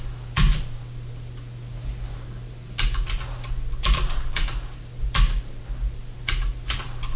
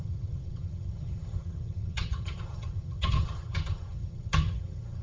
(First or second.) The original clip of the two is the first